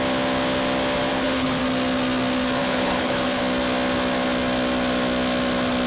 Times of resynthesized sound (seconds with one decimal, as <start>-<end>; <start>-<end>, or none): 1.1-1.6; 2.6-3.4

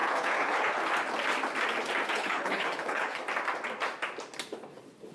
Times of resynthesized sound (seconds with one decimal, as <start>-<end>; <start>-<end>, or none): 0.0-0.8; 2.1-3.2